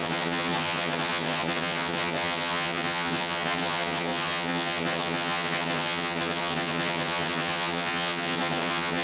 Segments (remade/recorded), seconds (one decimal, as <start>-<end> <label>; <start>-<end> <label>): 0.0-9.0 remade